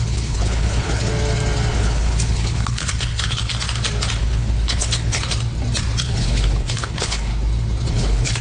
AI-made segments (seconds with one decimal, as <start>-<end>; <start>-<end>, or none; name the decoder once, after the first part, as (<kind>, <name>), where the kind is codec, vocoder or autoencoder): 0.0-1.1 (codec, HILCodec); 1.8-3.4; 4.2-5.2; 6.0-7.3; 7.9-8.4

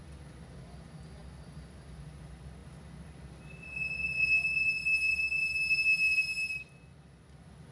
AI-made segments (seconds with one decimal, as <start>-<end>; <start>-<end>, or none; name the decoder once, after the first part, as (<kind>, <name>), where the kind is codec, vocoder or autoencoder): none

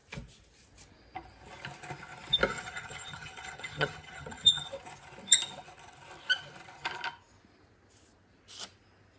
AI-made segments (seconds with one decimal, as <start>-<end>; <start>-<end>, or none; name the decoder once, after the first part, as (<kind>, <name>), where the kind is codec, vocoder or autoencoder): 2.5-4.7 (vocoder, HiFi-GAN)

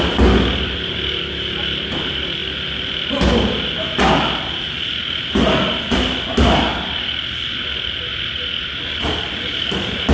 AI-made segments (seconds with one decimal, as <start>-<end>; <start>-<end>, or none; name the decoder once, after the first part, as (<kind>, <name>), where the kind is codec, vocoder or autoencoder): none

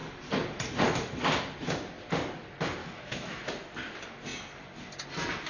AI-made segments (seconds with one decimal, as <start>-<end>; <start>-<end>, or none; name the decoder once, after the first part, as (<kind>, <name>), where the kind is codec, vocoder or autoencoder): 2.8-3.5 (autoencoder, DAC-VAE)

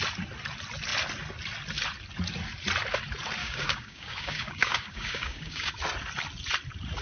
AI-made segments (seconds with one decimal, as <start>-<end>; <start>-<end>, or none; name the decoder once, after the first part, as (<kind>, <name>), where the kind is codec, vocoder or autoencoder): 3.4-5.7 (codec, DAC)